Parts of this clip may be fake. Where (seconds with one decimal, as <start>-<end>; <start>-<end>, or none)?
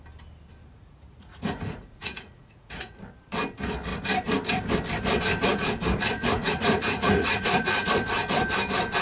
0.6-3.0; 6.1-7.9